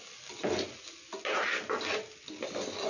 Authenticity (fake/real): real